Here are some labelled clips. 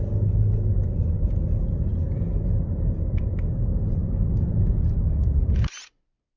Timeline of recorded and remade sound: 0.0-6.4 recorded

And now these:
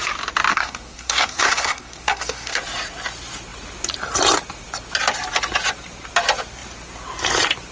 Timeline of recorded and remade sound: 0.0-0.5 recorded; 0.5-2.6 remade; 2.6-7.7 recorded

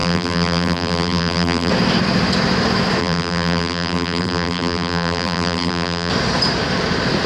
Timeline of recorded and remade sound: 0.0-1.7 remade; 1.7-3.0 recorded; 3.0-6.1 remade; 6.1-7.3 recorded

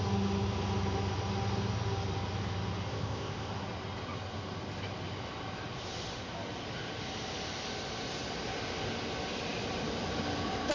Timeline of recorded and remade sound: 0.0-2.9 recorded; 2.9-3.5 remade; 3.5-10.7 recorded

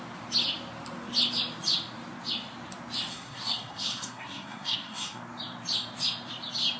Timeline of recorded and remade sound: 0.0-3.1 recorded; 3.1-5.2 remade; 5.2-6.8 recorded